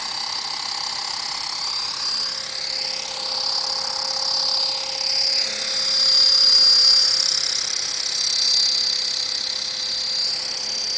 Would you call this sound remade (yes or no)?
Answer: no